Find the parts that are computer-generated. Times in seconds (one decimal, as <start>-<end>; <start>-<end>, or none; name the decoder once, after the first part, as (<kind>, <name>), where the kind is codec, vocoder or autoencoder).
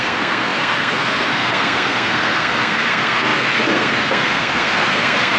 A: 0.0-5.4 (codec, SNAC)